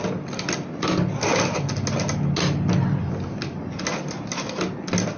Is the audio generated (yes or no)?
no